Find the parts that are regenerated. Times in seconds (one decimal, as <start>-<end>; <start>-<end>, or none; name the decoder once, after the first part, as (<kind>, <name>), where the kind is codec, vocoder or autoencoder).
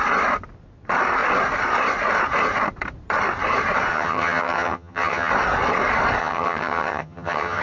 3.9-5.3 (vocoder, HiFi-GAN); 6.2-7.6